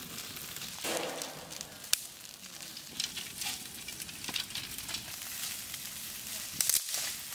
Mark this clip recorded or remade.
recorded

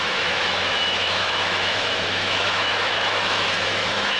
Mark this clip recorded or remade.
remade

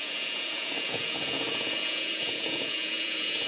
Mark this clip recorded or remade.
remade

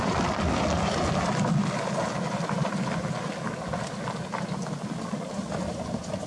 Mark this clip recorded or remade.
recorded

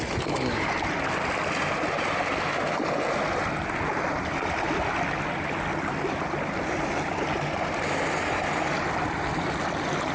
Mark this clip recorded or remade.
recorded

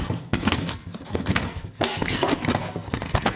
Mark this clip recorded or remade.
remade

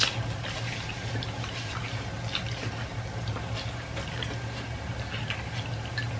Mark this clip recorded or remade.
recorded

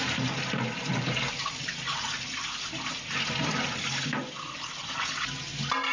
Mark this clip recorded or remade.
recorded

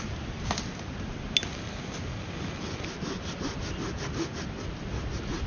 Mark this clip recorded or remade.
recorded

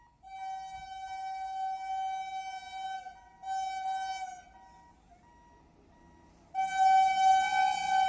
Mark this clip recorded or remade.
recorded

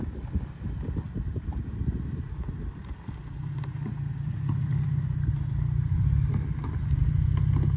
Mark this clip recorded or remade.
recorded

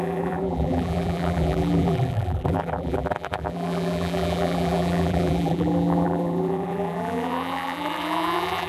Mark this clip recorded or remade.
remade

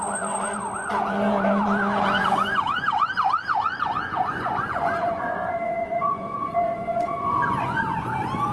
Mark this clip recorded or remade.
remade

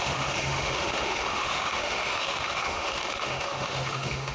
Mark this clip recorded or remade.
remade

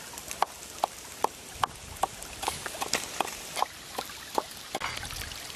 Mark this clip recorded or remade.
recorded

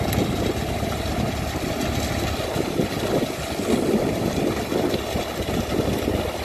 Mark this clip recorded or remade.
recorded